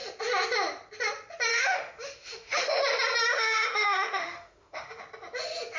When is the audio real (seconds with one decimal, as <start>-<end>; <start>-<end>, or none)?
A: 0.0-1.5; 2.8-3.3; 5.0-5.8